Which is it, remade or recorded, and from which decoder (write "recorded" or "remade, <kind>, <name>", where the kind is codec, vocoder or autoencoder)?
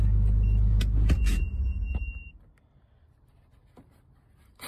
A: recorded